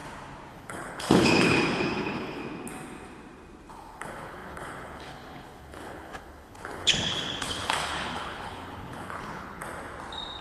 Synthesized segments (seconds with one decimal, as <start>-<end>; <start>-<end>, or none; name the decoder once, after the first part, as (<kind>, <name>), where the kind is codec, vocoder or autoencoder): 0.5-2.4 (codec, HILCodec); 3.7-9.6